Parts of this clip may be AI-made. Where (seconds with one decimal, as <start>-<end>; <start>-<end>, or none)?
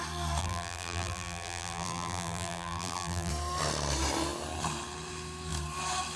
0.4-3.3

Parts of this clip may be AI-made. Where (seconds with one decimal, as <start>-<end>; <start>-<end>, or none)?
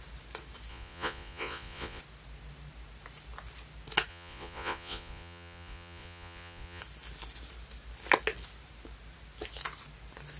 0.7-2.0; 4.1-6.8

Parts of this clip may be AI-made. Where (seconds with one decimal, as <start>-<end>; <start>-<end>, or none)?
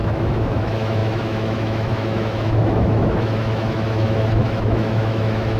0.0-5.6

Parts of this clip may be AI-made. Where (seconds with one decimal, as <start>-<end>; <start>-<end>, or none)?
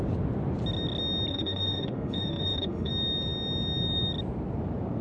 1.3-2.9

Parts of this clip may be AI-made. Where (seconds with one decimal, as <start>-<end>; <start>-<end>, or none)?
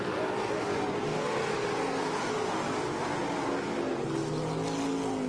none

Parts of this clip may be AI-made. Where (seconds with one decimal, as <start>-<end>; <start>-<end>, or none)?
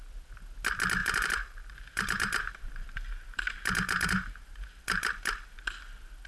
1.0-4.8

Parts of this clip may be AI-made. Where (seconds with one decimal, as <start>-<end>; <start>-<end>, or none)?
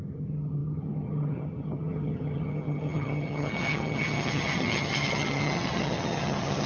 0.0-6.7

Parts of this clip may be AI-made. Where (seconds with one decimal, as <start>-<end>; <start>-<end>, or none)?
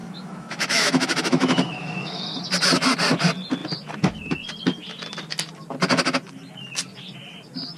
0.0-2.4